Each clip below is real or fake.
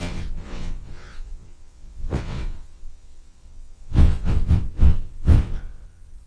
fake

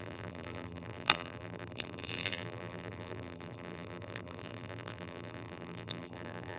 fake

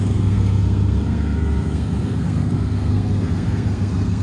fake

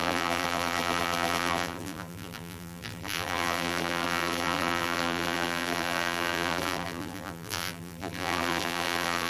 fake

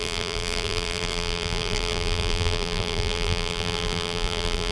fake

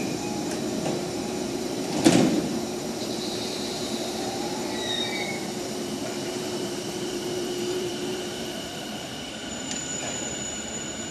fake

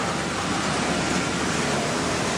real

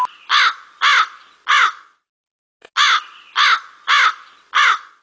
real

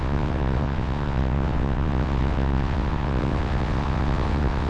fake